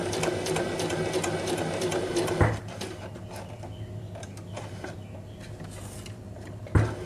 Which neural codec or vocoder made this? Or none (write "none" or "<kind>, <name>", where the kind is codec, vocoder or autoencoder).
none